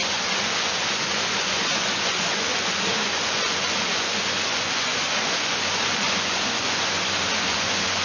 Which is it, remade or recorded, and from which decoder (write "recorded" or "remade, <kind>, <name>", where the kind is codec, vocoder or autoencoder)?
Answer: remade, vocoder, Vocos